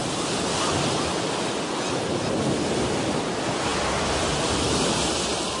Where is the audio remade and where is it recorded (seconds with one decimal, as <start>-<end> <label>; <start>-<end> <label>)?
0.0-5.6 recorded